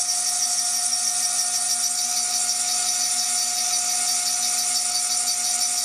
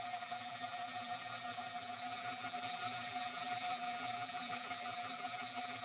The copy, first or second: second